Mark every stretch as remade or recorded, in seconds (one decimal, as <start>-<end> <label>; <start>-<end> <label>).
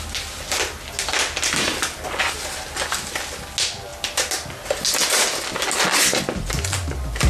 0.0-7.3 recorded